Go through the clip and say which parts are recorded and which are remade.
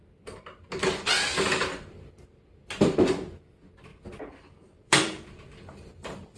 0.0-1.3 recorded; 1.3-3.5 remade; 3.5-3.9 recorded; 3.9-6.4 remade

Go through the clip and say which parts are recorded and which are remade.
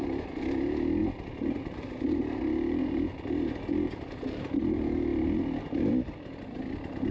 0.0-7.1 recorded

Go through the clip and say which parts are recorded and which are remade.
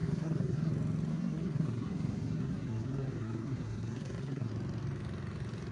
0.0-0.7 remade; 0.7-1.1 recorded; 1.1-4.5 remade; 4.5-5.7 recorded